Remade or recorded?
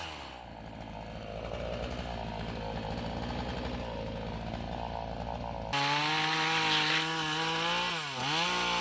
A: recorded